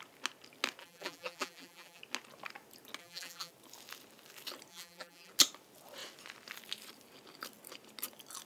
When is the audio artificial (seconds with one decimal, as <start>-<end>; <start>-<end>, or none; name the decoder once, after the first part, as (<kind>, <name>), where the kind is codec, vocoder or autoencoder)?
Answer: 0.8-2.0 (vocoder, BigVGAN v2); 3.0-3.5; 4.7-5.3